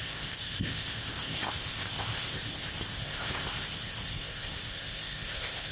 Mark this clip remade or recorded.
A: remade